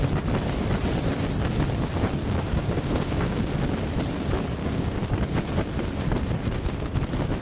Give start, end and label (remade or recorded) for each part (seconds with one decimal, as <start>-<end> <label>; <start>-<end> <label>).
0.0-2.2 recorded; 2.2-3.4 remade; 3.4-4.6 recorded; 4.6-5.1 remade; 5.1-7.4 recorded